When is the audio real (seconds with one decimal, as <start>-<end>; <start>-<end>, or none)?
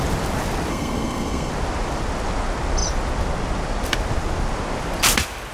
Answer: 0.0-0.7; 1.5-5.5